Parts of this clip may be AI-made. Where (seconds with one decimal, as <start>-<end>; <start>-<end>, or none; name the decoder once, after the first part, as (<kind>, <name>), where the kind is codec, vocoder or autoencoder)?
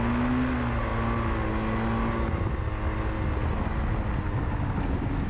none